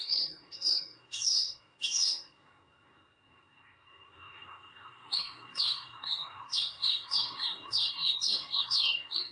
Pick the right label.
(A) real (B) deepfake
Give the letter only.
B